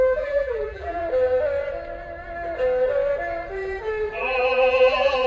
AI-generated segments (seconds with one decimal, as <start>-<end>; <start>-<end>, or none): 0.0-1.0; 4.2-5.3